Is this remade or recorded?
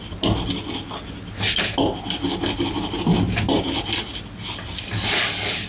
recorded